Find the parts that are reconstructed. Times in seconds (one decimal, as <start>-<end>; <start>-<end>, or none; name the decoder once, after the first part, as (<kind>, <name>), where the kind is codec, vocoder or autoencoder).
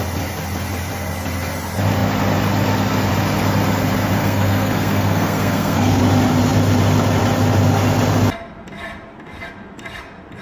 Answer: 4.2-6.0 (codec, SNAC)